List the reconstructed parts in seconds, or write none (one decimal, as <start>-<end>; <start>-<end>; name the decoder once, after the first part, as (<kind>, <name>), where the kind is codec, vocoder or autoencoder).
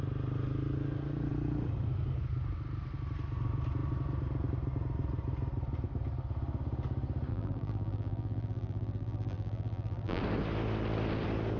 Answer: 7.3-10.2 (vocoder, BigVGAN v2)